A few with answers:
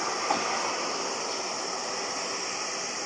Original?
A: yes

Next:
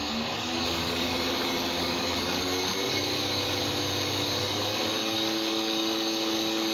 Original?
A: no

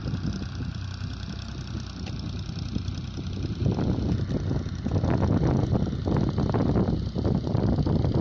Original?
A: yes